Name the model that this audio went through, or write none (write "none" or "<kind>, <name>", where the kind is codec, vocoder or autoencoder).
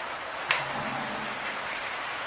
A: vocoder, BigVGAN v2